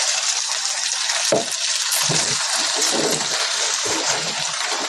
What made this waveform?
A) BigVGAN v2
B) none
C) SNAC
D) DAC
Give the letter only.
A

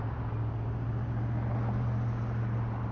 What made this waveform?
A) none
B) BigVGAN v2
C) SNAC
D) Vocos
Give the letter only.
A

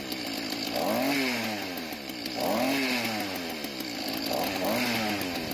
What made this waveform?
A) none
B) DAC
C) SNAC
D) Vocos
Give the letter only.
A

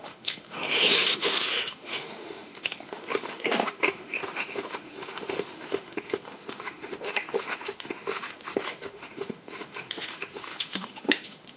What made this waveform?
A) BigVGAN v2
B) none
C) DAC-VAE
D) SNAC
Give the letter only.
C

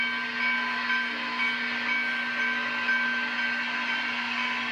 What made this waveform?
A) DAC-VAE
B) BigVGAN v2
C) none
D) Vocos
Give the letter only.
C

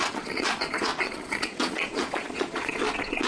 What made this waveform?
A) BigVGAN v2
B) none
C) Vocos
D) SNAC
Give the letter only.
C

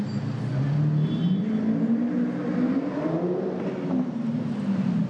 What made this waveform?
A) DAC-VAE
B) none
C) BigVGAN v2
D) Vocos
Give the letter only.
B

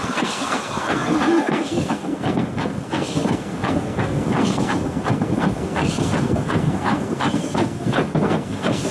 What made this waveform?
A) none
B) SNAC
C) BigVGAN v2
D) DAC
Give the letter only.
B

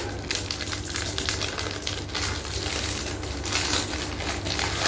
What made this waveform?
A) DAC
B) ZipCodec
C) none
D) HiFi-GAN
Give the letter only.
C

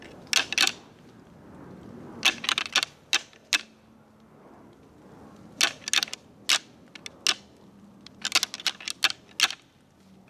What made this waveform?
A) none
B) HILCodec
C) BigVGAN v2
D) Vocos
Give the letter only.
A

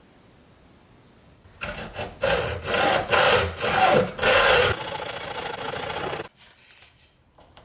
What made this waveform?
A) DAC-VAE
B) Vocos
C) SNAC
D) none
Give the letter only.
D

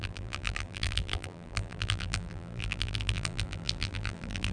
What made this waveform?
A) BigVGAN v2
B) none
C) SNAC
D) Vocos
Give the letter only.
A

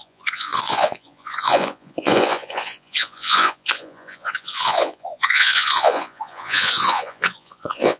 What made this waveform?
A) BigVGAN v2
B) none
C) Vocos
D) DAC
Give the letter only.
C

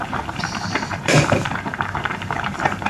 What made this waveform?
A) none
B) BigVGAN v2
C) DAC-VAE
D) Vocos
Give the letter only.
B